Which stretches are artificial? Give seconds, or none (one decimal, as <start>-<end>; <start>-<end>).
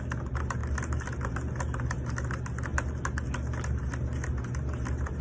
none